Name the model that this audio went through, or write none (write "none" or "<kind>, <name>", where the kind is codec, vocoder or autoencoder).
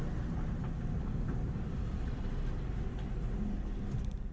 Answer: none